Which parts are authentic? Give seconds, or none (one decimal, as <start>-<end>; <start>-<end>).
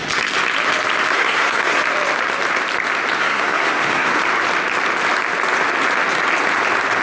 0.0-1.1; 1.8-3.2; 4.2-7.0